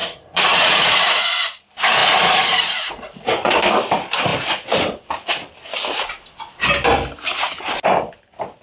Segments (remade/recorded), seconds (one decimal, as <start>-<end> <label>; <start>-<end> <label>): 0.0-1.6 remade; 1.6-2.0 recorded; 2.0-3.7 remade; 3.7-8.6 recorded